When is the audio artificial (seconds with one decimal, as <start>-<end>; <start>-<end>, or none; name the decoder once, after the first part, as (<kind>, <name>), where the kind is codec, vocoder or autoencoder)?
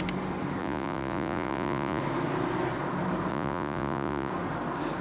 0.6-2.0 (vocoder, Vocos); 3.3-4.3